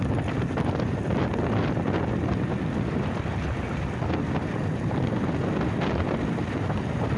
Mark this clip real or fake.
real